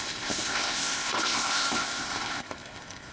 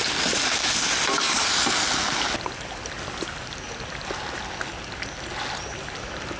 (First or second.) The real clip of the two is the second